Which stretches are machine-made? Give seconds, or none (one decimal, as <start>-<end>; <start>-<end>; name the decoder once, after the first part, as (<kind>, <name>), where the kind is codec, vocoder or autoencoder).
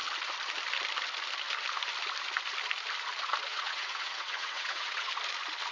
3.5-5.1 (vocoder, WaveNeXt)